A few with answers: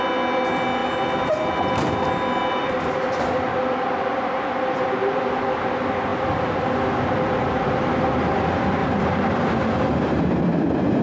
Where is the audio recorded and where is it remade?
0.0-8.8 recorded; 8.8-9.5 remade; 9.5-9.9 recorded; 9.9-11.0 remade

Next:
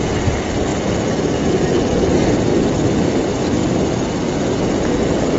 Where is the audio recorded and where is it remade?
0.0-5.4 recorded